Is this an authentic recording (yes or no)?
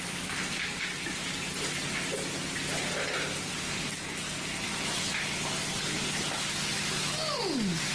yes